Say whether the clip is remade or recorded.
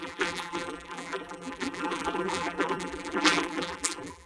remade